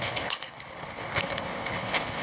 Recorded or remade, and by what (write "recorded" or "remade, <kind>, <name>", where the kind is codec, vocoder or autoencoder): remade, codec, HILCodec